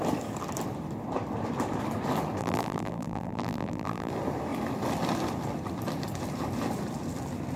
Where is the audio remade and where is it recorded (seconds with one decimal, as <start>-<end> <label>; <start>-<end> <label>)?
0.0-2.4 recorded; 2.4-4.1 remade; 4.1-7.6 recorded